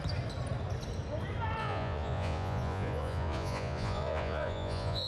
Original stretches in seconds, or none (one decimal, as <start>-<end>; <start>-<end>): 0.0-1.6